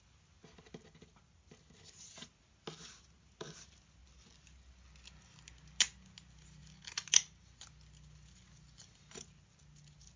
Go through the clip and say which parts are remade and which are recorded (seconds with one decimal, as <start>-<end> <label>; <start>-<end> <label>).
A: 0.0-10.2 recorded

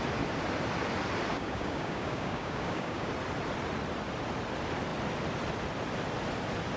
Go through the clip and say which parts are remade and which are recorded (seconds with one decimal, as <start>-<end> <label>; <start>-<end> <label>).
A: 0.0-1.3 recorded; 1.3-3.1 remade; 3.1-6.8 recorded

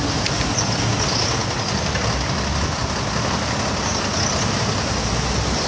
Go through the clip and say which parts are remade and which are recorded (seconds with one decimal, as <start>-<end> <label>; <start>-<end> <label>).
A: 0.0-5.7 recorded

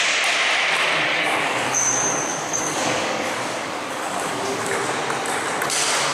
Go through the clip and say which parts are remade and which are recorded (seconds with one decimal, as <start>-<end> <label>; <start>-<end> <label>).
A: 0.0-1.1 recorded; 1.1-4.8 remade; 4.8-6.1 recorded